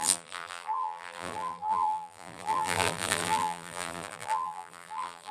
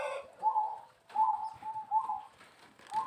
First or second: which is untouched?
second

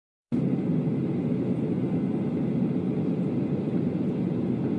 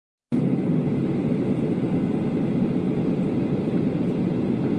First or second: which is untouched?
first